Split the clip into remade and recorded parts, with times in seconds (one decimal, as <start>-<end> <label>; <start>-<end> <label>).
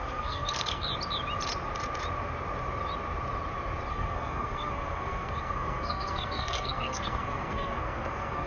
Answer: 0.0-0.9 remade; 0.9-3.9 recorded; 3.9-8.5 remade